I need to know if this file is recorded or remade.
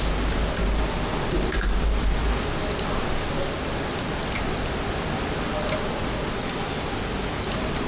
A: recorded